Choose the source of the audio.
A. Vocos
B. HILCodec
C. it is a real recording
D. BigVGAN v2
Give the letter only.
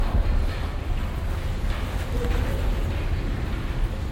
C